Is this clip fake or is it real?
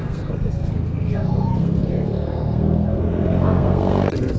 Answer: fake